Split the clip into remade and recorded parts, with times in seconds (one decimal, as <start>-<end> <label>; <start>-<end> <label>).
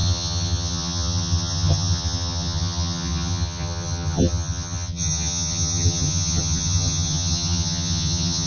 0.0-8.5 remade